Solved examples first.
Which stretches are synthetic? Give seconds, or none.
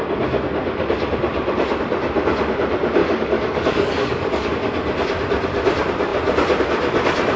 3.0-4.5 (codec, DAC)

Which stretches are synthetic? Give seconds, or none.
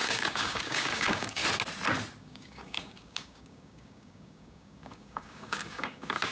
0.0-1.4 (codec, DAC); 2.2-6.3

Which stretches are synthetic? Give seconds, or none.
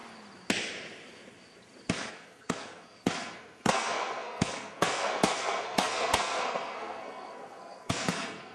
2.1-8.5 (codec, SNAC)